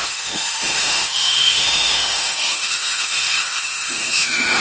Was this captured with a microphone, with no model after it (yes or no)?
no